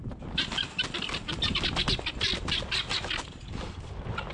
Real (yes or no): yes